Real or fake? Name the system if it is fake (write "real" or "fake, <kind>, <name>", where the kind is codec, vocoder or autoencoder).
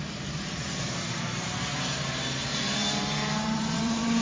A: fake, vocoder, BigVGAN v2